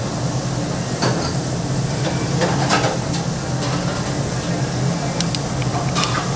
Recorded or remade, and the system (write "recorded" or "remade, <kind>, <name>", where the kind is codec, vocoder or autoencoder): recorded